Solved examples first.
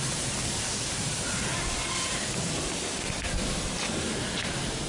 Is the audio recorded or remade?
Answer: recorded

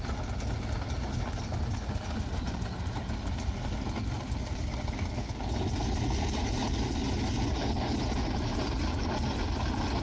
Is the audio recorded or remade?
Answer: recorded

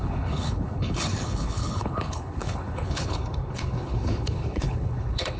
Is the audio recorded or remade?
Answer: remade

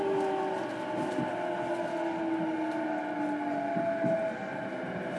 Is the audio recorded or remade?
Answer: recorded